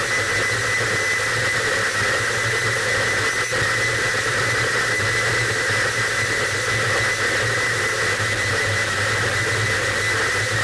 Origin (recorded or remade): recorded